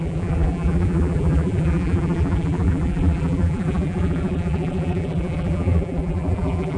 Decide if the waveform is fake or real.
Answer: fake